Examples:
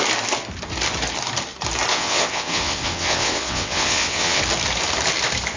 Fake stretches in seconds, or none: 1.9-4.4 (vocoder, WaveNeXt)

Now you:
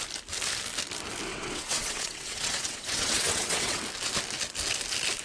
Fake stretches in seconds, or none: 1.3-3.8 (vocoder, WaveNeXt)